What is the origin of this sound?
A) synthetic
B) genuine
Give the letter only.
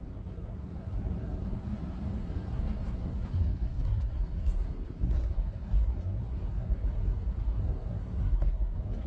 A